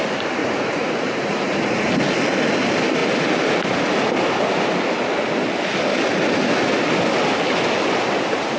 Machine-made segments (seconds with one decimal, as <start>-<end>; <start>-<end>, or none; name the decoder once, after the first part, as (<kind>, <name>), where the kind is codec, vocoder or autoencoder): 0.4-1.9 (vocoder, Vocos)